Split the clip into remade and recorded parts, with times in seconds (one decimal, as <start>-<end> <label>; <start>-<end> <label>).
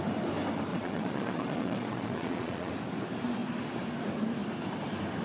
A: 0.0-0.7 recorded; 0.7-2.7 remade; 2.7-5.2 recorded